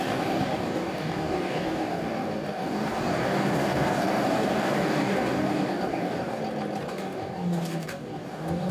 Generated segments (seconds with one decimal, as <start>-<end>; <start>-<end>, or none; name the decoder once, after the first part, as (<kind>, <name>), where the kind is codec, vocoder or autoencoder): 0.0-6.4 (codec, DAC); 6.9-8.7